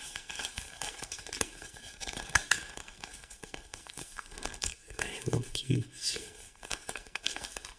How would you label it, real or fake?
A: fake